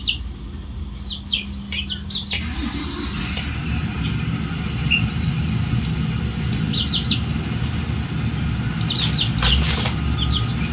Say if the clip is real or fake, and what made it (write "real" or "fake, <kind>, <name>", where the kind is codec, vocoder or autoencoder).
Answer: real